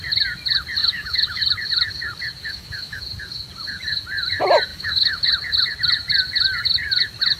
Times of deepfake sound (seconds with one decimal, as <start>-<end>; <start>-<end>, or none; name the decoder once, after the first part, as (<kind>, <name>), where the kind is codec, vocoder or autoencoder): 0.8-1.4 (autoencoder, DAC-VAE); 2.4-3.0; 4.7-5.3